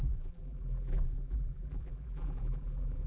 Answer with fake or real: fake